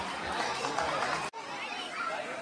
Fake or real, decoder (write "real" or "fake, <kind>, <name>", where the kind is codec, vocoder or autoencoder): fake, vocoder, BigVGAN v2